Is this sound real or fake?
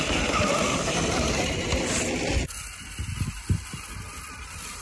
real